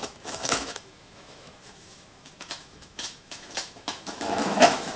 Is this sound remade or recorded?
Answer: remade